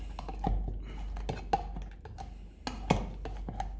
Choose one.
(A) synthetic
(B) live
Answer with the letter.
B